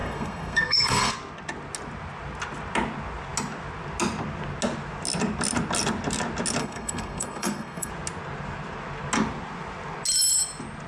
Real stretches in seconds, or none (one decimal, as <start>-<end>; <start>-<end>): 1.1-6.6; 7.9-10.9